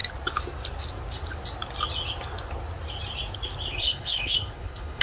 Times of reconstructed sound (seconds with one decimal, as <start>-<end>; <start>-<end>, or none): 3.8-5.0